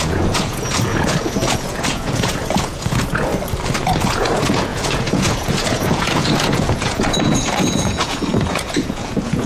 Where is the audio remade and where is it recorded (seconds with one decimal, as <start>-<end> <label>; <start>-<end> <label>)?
0.0-3.3 remade; 3.3-4.0 recorded; 4.0-9.5 remade

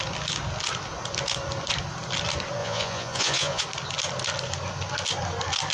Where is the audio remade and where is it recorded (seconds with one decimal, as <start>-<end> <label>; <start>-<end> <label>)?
0.0-2.6 recorded; 2.6-3.6 remade; 3.6-5.7 recorded